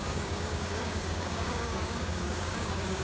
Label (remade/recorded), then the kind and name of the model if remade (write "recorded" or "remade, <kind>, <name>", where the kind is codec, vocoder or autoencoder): remade, codec, DAC